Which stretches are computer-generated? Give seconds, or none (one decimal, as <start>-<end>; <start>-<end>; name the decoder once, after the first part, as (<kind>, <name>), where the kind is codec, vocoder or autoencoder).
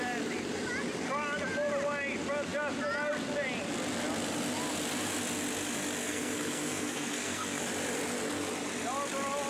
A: 6.0-7.6 (codec, SNAC)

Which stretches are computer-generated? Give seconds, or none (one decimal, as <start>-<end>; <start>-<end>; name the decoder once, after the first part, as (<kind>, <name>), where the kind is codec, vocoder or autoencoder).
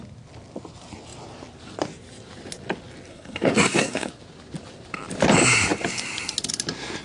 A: 3.1-4.1 (codec, SNAC)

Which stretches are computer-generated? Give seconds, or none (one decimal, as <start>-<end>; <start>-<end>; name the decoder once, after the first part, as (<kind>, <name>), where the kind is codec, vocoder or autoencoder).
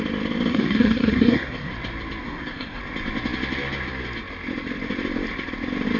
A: 0.5-1.7 (codec, SNAC); 2.2-2.8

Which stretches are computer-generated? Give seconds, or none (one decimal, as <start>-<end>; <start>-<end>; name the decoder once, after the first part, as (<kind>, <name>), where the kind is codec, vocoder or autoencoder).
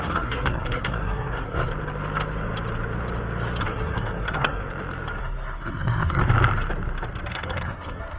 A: 0.0-1.7 (codec, SNAC); 3.6-4.6; 5.2-6.2; 7.3-8.2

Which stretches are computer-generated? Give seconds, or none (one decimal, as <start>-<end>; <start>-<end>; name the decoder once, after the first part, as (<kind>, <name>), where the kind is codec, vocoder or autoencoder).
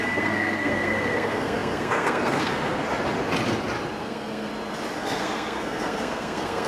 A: 0.0-2.8 (codec, SNAC); 4.0-4.5; 5.0-6.7